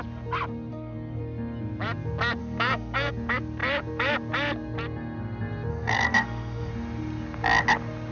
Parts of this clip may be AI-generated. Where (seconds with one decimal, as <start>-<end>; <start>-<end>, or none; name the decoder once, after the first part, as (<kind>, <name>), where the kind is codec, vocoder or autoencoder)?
0.7-1.2 (codec, SNAC); 2.4-3.1; 5.7-6.7